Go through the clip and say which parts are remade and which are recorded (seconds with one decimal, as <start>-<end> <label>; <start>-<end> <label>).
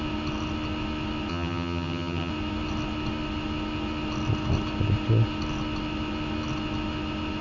0.0-1.3 recorded; 1.3-2.3 remade; 2.3-7.4 recorded